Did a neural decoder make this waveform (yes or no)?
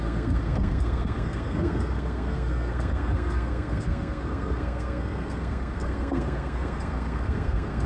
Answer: yes